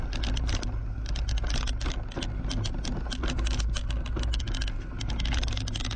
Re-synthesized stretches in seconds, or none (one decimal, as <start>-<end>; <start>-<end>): none